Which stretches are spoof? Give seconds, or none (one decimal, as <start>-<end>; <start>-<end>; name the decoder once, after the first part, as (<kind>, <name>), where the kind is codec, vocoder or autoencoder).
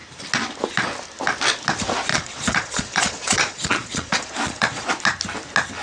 2.1-4.9 (vocoder, Vocos)